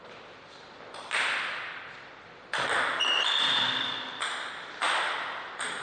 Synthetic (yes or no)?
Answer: yes